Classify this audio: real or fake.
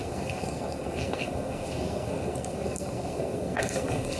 fake